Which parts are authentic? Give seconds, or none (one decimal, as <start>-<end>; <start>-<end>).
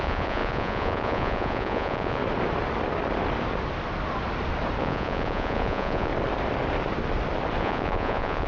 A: 2.2-4.8; 6.1-7.6